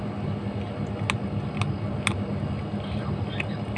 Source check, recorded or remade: recorded